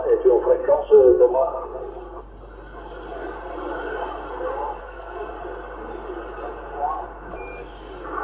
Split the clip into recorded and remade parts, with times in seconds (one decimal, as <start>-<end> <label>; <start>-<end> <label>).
0.0-0.6 recorded; 0.6-1.2 remade; 1.2-4.8 recorded; 4.8-5.3 remade; 5.3-8.2 recorded